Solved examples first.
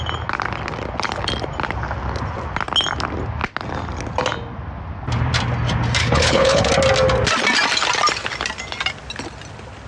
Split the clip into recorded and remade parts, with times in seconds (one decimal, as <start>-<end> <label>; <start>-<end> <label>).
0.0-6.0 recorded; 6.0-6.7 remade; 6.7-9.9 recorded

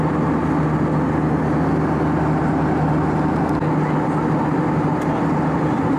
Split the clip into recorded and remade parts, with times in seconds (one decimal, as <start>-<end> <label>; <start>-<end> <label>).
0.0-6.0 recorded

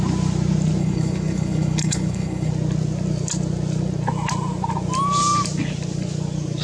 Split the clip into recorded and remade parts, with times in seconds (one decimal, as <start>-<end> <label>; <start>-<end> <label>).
0.0-0.8 recorded; 0.8-2.5 remade; 2.5-6.6 recorded

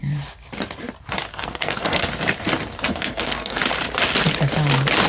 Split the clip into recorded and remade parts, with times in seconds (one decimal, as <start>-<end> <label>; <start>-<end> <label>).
0.0-1.3 recorded; 1.3-2.0 remade; 2.0-2.9 recorded; 2.9-3.6 remade; 3.6-5.1 recorded

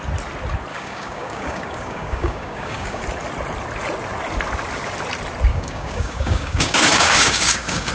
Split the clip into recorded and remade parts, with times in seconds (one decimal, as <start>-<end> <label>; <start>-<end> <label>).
0.0-0.7 recorded; 0.7-3.0 remade; 3.0-5.5 recorded; 5.5-7.9 remade

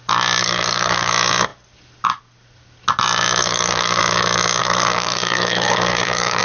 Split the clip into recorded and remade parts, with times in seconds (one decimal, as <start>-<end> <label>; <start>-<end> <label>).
0.0-0.4 recorded; 0.4-1.1 remade; 1.1-3.4 recorded; 3.4-4.0 remade; 4.0-4.6 recorded; 4.6-6.4 remade

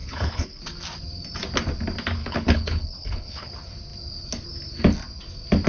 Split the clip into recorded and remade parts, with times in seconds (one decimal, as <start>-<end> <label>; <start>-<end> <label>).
0.0-0.6 remade; 0.6-2.2 recorded; 2.2-3.5 remade; 3.5-5.7 recorded